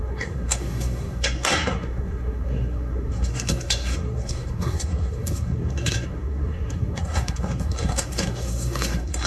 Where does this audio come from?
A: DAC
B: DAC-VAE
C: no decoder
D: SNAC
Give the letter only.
D